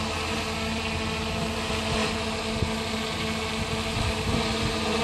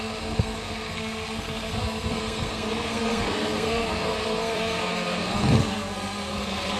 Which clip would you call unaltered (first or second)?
first